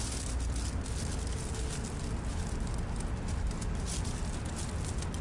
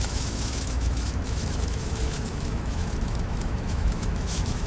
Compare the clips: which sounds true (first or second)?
first